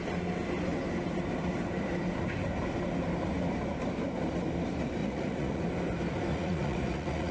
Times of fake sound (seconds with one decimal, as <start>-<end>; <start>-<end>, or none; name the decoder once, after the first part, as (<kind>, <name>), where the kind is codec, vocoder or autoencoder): 5.0-5.6 (vocoder, Vocos); 6.3-7.3